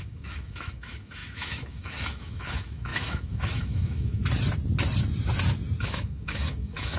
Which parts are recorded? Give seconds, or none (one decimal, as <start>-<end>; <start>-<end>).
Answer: 4.2-5.8